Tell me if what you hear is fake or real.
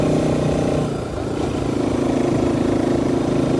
real